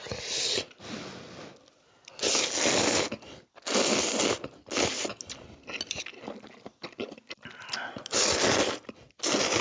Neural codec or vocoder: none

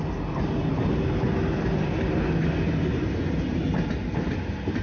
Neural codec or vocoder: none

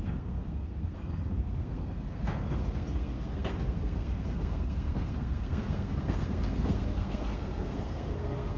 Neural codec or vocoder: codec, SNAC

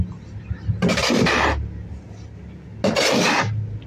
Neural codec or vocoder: none